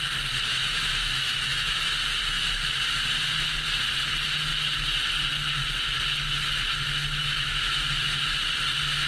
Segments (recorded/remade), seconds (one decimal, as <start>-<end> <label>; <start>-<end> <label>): 0.0-0.5 recorded; 0.5-1.9 remade; 1.9-7.2 recorded; 7.2-7.8 remade; 7.8-9.1 recorded

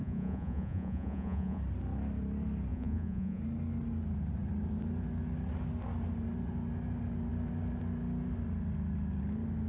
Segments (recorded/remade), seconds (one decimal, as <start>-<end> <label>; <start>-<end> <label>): 0.0-1.6 remade; 1.6-2.7 recorded; 2.7-3.4 remade; 3.4-9.7 recorded

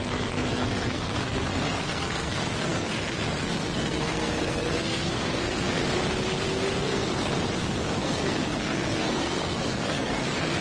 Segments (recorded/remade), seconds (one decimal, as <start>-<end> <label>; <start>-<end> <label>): 0.0-5.8 remade; 5.8-6.8 recorded; 6.8-10.6 remade

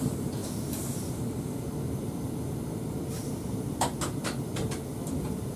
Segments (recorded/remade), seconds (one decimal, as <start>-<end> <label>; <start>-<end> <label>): 0.0-5.6 remade

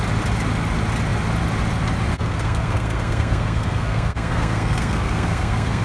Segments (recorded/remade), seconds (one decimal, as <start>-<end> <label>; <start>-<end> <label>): 0.0-2.1 recorded; 2.1-5.8 remade

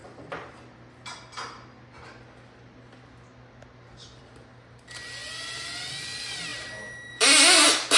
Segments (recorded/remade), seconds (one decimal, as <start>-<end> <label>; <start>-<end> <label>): 0.0-8.0 recorded